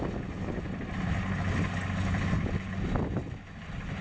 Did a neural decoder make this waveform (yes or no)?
no